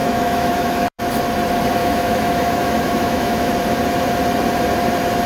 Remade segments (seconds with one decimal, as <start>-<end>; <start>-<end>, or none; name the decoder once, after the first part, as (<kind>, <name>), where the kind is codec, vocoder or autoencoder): 0.0-1.0 (autoencoder, DAC-VAE); 1.8-3.5